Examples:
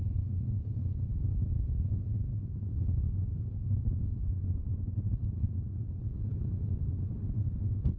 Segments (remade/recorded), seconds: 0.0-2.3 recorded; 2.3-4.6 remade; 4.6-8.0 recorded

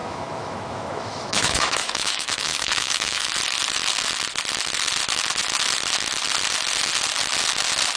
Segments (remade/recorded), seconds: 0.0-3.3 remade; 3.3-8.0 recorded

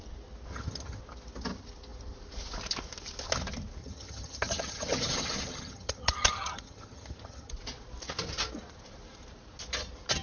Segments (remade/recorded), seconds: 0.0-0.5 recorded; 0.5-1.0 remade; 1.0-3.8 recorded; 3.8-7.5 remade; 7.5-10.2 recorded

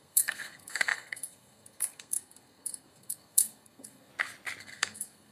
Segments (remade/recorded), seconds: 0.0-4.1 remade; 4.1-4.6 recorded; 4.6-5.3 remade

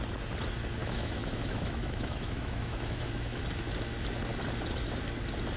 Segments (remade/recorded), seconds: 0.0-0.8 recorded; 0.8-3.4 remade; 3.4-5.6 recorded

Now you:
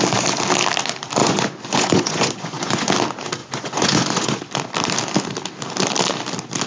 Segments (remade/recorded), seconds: 0.0-1.2 recorded; 1.2-2.9 remade; 2.9-3.4 recorded; 3.4-4.4 remade; 4.4-6.7 recorded

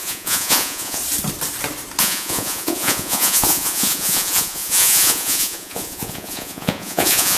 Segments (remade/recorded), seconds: 0.0-1.0 remade; 1.0-2.0 recorded; 2.0-7.4 remade

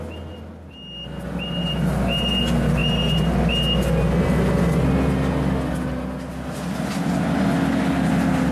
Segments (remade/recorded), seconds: 0.0-8.5 recorded